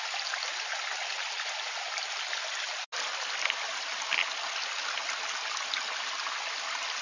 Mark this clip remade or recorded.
recorded